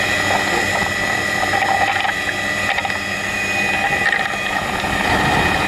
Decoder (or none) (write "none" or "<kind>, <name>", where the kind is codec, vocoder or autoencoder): none